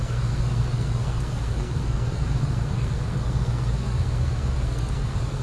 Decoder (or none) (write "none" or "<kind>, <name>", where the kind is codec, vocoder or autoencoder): codec, SNAC